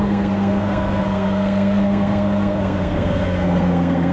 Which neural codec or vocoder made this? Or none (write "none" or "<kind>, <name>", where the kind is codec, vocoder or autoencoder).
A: codec, SNAC